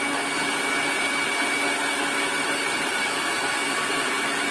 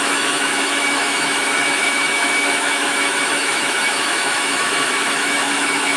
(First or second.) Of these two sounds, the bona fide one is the first